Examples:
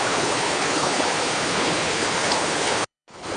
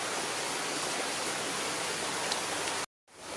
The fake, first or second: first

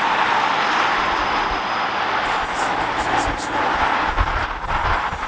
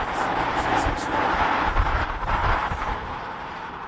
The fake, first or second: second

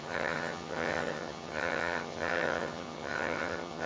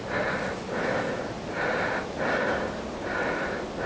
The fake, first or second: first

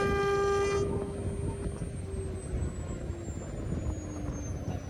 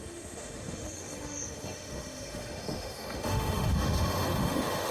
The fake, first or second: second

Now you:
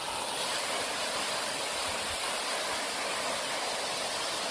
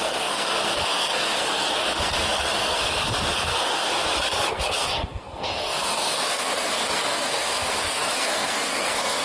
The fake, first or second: second